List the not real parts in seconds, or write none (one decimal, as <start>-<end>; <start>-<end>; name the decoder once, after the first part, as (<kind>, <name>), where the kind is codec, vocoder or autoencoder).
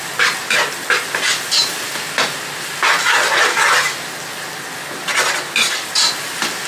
none